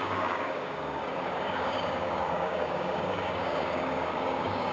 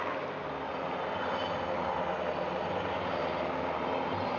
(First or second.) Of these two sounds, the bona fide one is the second